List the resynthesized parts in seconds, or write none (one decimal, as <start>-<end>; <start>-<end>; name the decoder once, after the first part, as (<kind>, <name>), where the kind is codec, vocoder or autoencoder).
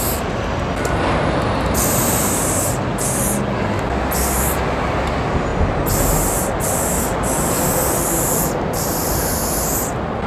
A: none